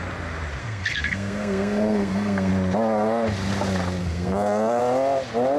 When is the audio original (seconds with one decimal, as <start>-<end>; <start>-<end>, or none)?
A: 0.0-0.6; 2.5-4.0; 4.8-5.6